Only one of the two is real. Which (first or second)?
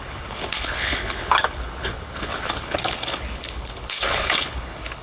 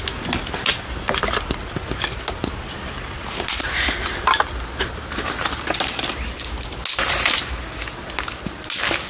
second